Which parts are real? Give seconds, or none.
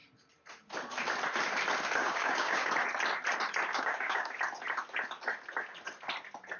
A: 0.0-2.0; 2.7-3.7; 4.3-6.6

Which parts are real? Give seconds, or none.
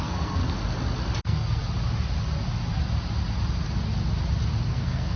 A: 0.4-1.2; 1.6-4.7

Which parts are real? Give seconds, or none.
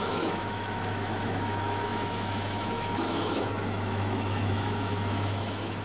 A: none